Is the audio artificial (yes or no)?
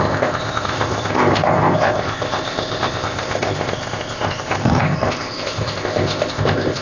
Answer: yes